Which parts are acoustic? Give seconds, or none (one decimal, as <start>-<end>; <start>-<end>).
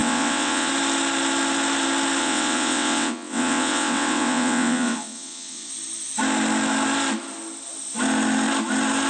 0.7-2.2; 5.7-9.1